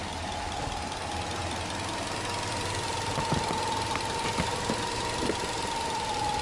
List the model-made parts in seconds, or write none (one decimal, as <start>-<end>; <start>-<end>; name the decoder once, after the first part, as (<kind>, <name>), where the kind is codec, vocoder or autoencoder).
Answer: none